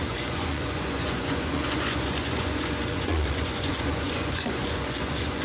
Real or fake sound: fake